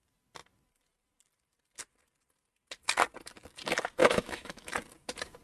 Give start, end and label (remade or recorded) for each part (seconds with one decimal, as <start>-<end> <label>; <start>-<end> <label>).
0.0-4.0 recorded; 4.0-4.7 remade; 4.7-5.4 recorded